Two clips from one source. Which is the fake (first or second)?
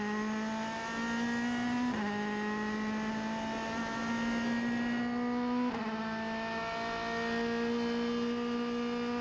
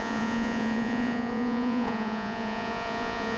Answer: second